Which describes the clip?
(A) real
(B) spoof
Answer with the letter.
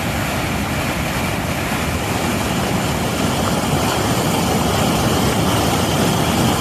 A